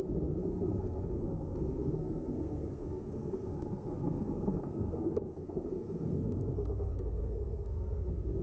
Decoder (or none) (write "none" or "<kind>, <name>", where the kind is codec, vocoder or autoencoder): codec, SNAC